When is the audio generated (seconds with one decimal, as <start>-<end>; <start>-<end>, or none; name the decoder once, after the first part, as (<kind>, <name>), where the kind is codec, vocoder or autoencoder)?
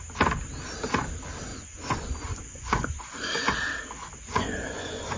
1.5-3.5 (vocoder, Vocos); 4.3-5.2